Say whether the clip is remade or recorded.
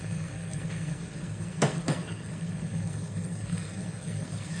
remade